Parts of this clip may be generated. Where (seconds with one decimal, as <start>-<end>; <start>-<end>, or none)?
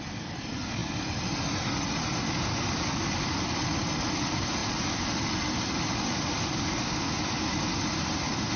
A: none